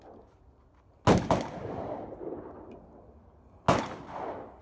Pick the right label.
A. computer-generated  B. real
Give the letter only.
B